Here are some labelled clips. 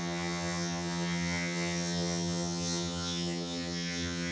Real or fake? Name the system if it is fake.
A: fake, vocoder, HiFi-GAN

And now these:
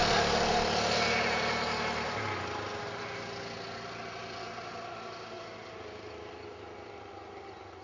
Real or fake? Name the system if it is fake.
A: real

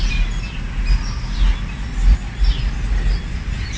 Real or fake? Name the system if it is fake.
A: real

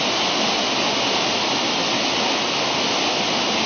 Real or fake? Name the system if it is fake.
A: real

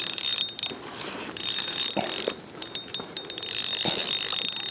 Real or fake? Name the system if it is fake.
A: real